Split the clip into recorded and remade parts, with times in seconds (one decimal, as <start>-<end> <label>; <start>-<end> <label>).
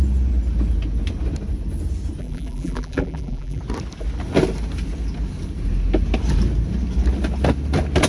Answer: 0.0-2.2 recorded; 2.2-3.6 remade; 3.6-8.1 recorded